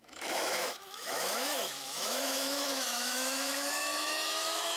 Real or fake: fake